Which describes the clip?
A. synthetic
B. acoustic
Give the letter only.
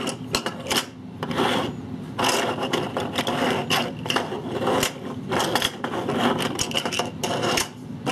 B